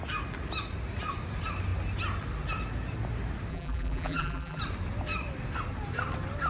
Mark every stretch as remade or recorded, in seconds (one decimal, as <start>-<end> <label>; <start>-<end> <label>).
0.0-3.5 recorded; 3.5-4.6 remade; 4.6-6.5 recorded